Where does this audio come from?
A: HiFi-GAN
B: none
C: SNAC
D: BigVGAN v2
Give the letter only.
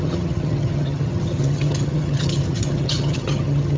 A